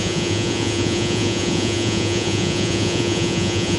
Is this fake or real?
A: fake